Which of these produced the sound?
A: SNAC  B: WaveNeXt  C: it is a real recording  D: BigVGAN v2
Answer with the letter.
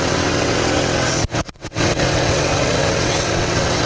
B